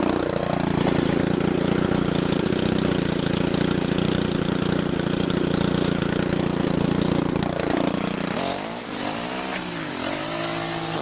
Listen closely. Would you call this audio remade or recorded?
recorded